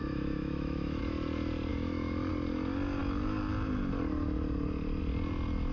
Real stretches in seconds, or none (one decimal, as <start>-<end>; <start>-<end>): 1.0-1.7; 2.3-5.7